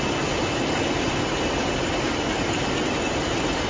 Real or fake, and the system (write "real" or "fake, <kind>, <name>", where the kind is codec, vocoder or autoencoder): real